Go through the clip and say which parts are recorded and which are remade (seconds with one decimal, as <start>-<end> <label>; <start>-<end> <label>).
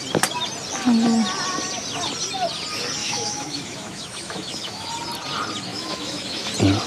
0.0-3.0 recorded; 3.0-4.9 remade; 4.9-5.7 recorded; 5.7-6.5 remade; 6.5-6.9 recorded